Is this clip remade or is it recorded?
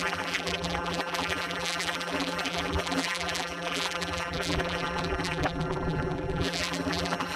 remade